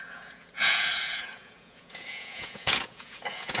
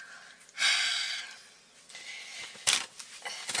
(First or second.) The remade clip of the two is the first